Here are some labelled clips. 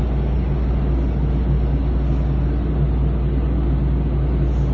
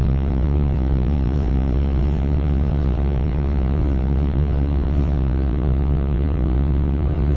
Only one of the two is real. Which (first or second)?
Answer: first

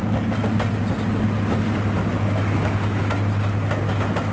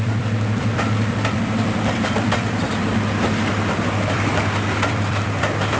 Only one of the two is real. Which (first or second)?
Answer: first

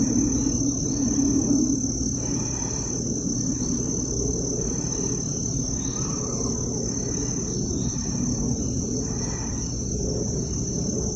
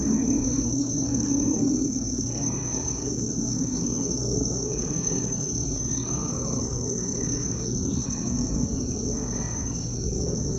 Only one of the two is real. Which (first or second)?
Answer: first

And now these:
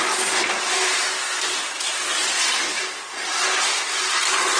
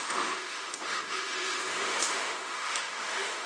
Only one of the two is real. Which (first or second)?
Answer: first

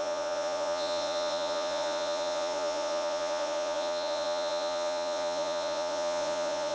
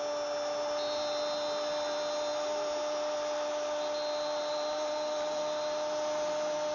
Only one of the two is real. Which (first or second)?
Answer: second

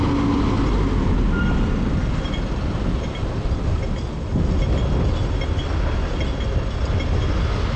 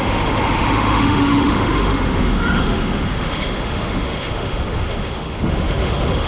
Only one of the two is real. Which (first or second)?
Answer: first